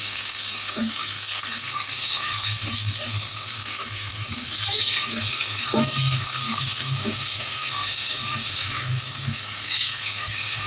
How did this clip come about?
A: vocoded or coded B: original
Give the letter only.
A